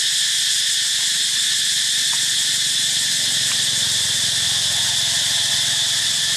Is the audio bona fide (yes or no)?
yes